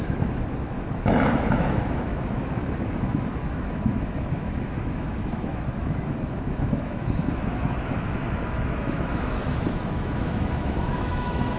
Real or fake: fake